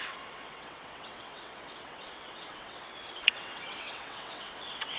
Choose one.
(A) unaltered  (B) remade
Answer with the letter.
B